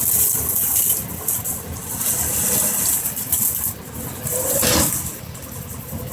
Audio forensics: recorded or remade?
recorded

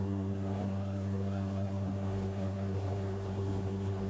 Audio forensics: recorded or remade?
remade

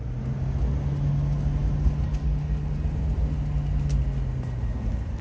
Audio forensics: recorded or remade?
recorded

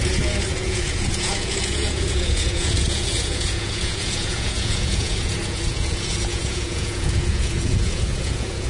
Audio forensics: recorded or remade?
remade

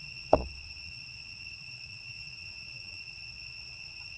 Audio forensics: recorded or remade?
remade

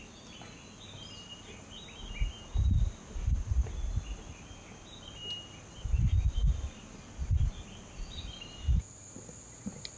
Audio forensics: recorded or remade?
recorded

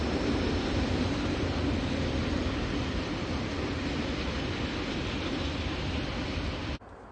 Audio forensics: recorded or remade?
remade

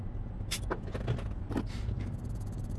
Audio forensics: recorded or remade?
recorded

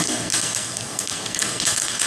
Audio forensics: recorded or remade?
remade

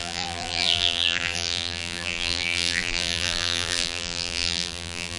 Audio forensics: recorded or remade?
remade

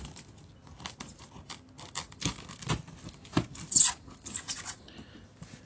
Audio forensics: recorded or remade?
recorded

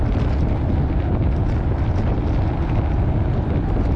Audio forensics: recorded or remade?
recorded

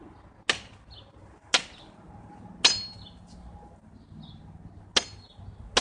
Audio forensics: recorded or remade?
recorded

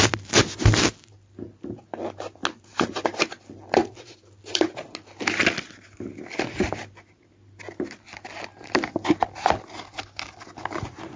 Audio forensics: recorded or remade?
recorded